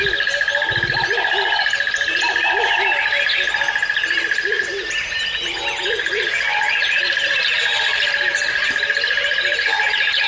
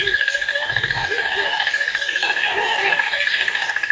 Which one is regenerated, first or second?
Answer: second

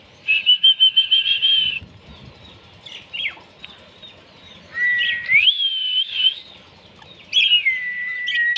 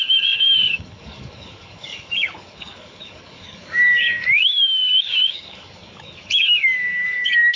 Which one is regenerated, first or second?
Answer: second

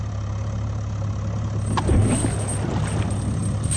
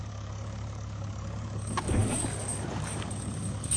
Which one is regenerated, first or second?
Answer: second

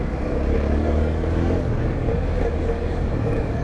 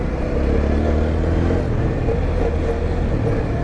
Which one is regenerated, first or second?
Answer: first